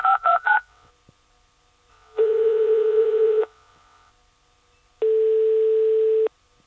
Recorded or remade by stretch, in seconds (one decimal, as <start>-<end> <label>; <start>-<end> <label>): 0.0-0.9 remade; 0.9-1.9 recorded; 1.9-4.1 remade; 4.1-6.7 recorded